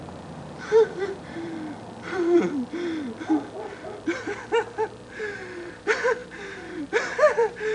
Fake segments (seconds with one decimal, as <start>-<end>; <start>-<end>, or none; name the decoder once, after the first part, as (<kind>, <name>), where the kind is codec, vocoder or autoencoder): 0.0-1.5 (vocoder, BigVGAN v2); 5.2-7.7